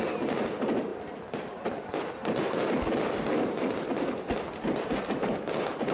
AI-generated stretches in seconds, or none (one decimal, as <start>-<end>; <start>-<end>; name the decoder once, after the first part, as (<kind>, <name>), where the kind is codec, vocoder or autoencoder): none